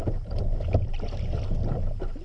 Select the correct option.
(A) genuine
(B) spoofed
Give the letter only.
A